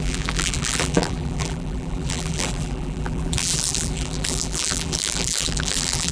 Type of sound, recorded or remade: remade